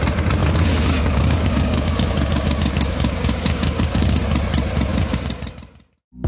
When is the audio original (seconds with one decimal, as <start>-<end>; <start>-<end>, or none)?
0.0-0.4; 4.2-4.9; 5.5-6.3